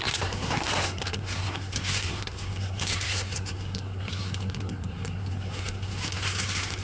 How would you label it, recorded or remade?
remade